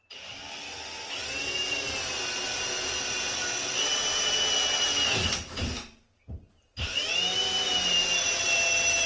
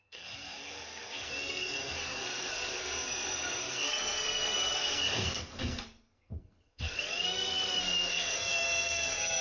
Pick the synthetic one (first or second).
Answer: second